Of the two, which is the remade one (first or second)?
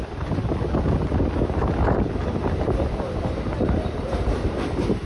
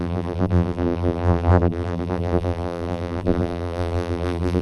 second